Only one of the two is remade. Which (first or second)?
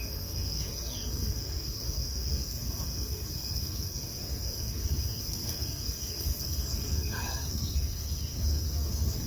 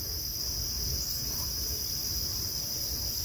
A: first